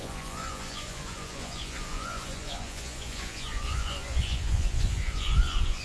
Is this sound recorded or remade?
remade